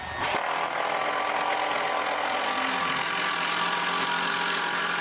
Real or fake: real